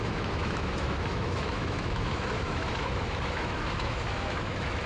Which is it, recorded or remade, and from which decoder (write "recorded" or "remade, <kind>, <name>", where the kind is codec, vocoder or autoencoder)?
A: remade, autoencoder, DAC-VAE